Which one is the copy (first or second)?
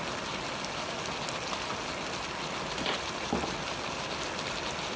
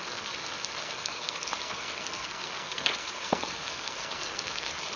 second